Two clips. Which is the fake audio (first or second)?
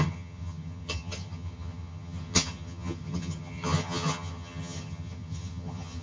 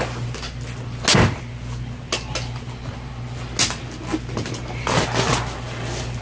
first